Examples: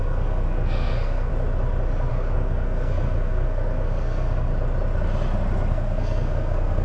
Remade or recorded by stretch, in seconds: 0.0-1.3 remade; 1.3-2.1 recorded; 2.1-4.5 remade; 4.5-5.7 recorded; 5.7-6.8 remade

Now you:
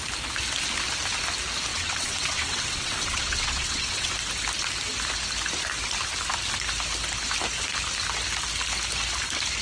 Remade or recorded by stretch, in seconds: 0.0-1.7 recorded; 1.7-4.1 remade; 4.1-9.6 recorded

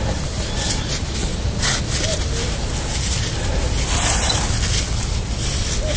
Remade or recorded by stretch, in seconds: 0.0-1.3 recorded; 1.3-1.8 remade; 1.8-6.0 recorded

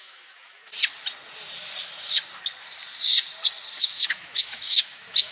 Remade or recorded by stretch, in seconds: 0.0-0.6 remade; 0.6-3.8 recorded; 3.8-5.3 remade

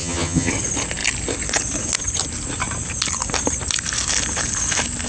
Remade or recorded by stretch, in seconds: 0.0-0.5 remade; 0.5-5.1 recorded

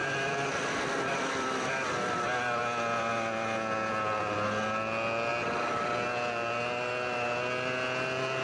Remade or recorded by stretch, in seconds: 0.0-2.6 remade; 2.6-8.4 recorded

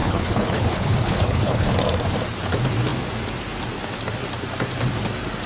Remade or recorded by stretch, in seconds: 0.0-1.7 remade; 1.7-5.5 recorded